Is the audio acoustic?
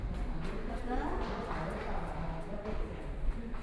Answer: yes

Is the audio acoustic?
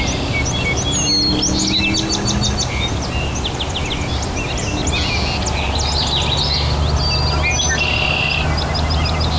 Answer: yes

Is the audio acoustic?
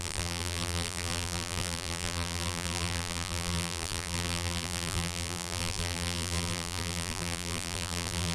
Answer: no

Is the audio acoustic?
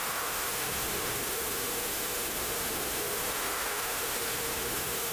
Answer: no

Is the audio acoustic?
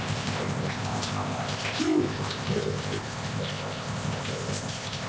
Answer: no